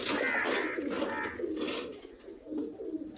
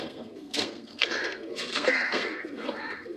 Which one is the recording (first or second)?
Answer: first